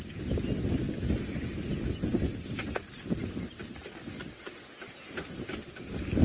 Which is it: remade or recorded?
recorded